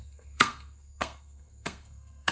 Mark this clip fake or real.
fake